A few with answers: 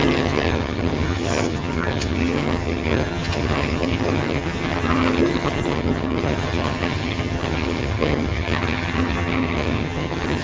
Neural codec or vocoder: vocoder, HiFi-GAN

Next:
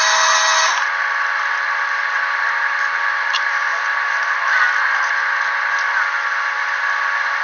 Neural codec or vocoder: none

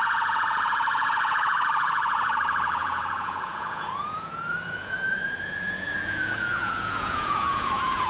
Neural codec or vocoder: vocoder, Vocos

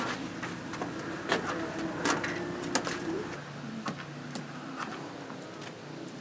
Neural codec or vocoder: none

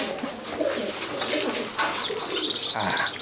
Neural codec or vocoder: none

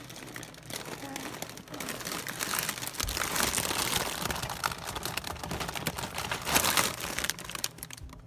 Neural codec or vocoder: none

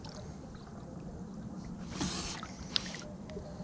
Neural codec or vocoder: none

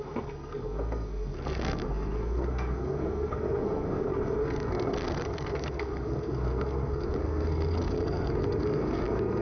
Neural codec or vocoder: codec, SNAC